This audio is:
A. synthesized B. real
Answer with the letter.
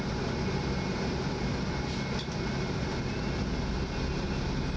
B